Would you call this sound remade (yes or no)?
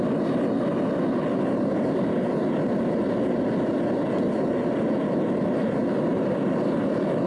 no